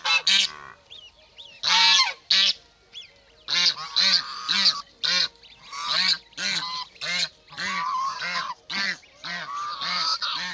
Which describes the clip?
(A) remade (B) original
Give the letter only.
B